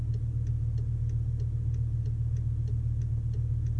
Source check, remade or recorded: recorded